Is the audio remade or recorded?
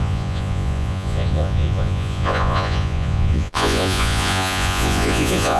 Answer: remade